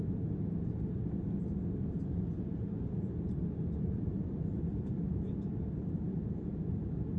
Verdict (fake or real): fake